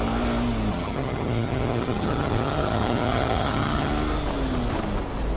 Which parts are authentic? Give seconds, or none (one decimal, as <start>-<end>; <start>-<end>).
0.0-0.7; 3.9-5.4